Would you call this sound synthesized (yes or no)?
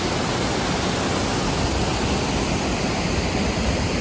no